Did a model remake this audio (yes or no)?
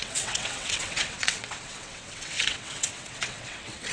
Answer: yes